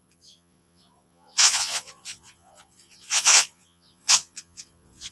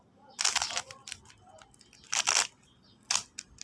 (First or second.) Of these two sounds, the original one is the second